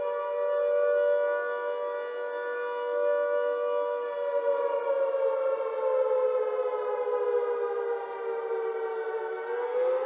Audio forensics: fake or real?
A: real